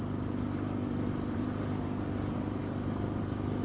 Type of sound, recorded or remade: recorded